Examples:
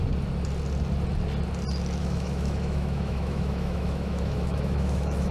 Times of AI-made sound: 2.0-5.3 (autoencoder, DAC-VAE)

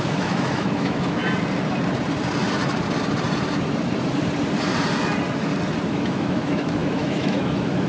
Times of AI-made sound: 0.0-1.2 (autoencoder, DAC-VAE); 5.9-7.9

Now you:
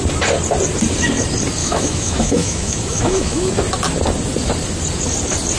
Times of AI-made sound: 1.6-3.5 (autoencoder, DAC-VAE)

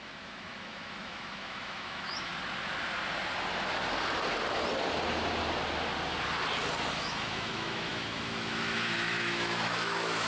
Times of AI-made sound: 0.0-2.3 (autoencoder, DAC-VAE); 6.9-10.3

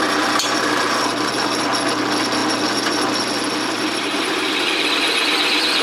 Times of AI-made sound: none

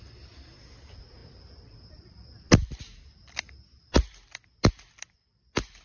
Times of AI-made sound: none

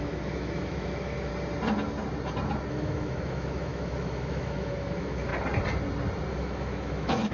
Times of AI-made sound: 0.0-1.3 (autoencoder, DAC-VAE); 2.7-5.3; 6.3-7.3